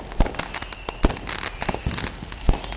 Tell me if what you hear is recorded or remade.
recorded